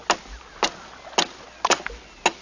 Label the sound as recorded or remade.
recorded